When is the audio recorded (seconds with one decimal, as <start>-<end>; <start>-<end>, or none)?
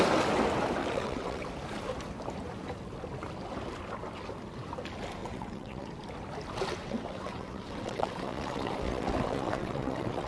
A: 0.0-0.8; 1.4-5.2; 5.9-6.8